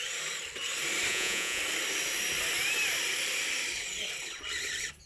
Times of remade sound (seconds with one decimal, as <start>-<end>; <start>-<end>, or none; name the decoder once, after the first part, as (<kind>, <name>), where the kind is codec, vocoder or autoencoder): 1.1-1.6 (vocoder, Vocos)